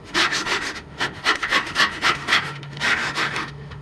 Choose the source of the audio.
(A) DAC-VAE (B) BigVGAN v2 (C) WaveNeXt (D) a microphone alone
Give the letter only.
A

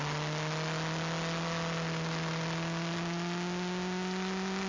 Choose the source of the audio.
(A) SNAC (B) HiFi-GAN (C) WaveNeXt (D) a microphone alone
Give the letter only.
D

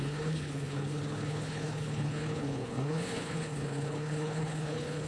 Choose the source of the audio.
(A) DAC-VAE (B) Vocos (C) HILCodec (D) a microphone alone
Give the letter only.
C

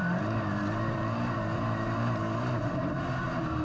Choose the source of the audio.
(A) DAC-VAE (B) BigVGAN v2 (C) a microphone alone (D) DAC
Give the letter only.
B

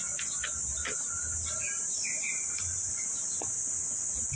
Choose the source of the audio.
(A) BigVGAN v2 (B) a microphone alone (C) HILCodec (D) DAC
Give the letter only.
B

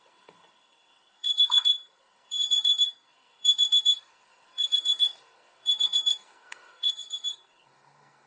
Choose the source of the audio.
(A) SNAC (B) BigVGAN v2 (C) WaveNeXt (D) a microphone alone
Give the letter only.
A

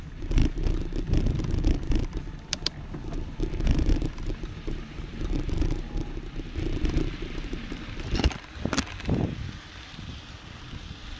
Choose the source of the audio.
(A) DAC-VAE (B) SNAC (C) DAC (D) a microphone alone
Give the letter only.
D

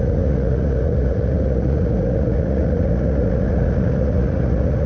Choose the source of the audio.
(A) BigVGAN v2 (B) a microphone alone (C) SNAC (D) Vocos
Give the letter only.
D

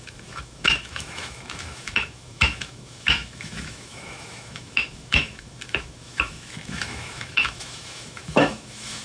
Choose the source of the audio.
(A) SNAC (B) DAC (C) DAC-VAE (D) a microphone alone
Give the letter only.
C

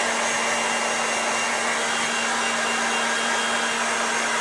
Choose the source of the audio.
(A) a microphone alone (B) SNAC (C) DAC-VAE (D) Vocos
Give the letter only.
A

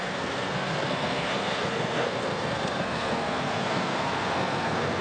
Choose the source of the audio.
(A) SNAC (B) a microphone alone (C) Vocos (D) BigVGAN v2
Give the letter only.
A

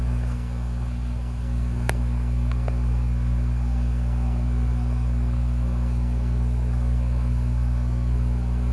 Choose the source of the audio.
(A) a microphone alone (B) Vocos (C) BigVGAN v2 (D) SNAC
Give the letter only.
D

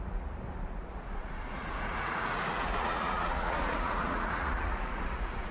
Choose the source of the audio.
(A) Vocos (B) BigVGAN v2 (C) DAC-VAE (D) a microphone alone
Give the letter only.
A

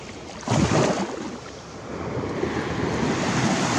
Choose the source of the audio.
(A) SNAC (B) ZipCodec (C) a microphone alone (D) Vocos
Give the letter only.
C